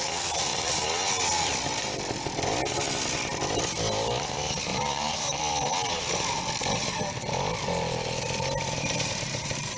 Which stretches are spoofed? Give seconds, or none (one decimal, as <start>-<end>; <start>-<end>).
4.7-5.4